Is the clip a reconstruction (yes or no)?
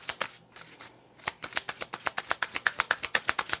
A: no